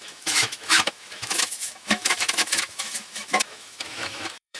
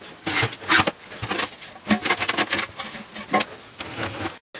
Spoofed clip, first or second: first